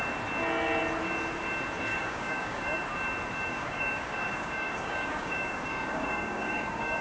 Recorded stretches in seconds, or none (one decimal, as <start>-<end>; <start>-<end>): 0.0-1.9; 2.8-3.5